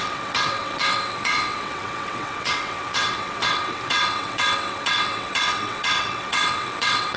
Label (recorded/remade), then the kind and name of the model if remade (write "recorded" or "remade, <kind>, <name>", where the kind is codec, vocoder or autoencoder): remade, vocoder, WaveNeXt